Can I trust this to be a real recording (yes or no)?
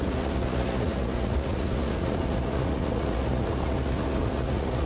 no